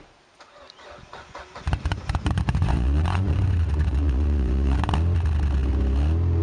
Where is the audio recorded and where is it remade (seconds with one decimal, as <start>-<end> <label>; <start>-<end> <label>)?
0.0-1.1 recorded; 1.1-4.9 remade; 4.9-6.4 recorded